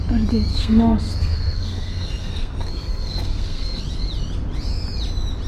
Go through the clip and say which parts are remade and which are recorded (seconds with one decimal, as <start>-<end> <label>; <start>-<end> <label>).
0.0-0.5 recorded; 0.5-3.8 remade; 3.8-5.5 recorded